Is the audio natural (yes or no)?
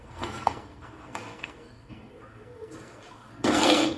no